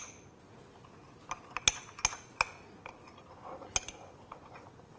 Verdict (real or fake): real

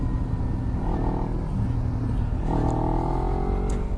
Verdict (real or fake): real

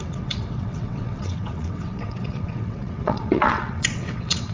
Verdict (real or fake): fake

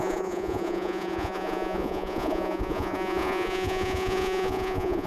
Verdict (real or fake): fake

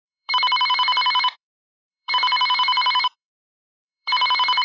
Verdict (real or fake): fake